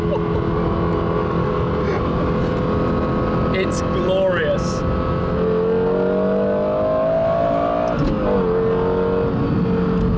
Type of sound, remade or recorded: recorded